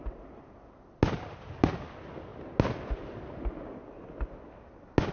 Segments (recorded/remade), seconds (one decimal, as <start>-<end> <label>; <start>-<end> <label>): 0.0-5.1 recorded